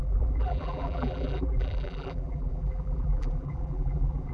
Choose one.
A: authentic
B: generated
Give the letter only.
B